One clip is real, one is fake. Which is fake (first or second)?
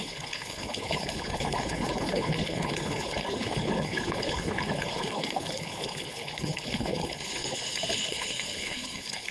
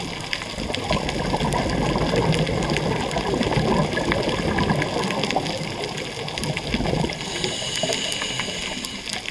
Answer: first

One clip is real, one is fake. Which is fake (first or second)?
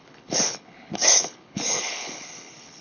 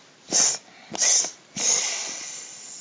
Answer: first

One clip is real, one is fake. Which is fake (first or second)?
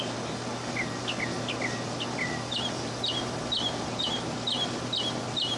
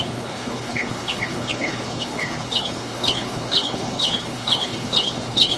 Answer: second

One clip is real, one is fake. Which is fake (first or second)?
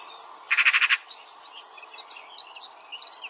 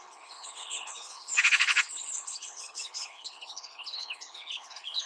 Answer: second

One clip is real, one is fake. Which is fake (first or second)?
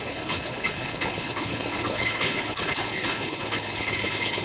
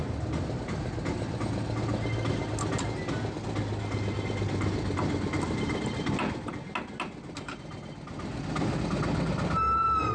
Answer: first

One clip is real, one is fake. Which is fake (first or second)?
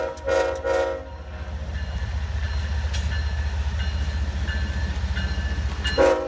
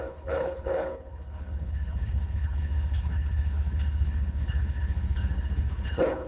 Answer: second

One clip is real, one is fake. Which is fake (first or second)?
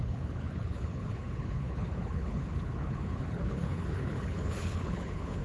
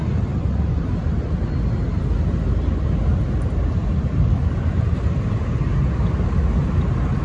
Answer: first